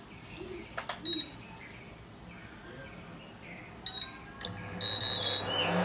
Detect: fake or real real